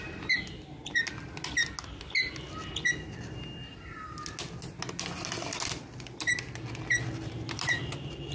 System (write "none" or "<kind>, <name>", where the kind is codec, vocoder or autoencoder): none